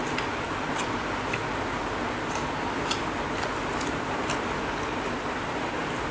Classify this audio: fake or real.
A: real